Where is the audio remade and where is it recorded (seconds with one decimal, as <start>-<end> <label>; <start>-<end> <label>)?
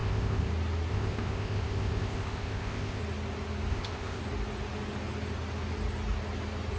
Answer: 0.0-0.5 remade; 0.5-0.9 recorded; 0.9-3.0 remade; 3.0-3.7 recorded; 3.7-4.2 remade; 4.2-6.8 recorded